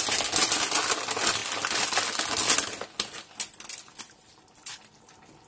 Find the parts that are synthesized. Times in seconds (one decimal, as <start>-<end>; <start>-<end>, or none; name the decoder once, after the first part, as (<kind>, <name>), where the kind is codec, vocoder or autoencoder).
none